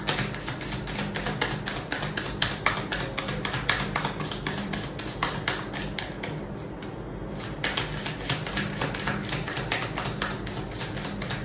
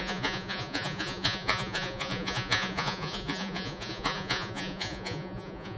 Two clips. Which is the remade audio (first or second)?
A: second